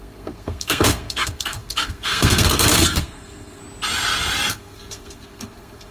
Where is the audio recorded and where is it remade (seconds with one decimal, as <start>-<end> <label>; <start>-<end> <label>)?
0.0-3.6 remade; 3.6-4.5 recorded; 4.5-5.9 remade